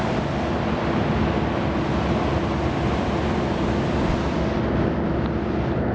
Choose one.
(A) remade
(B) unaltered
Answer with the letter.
B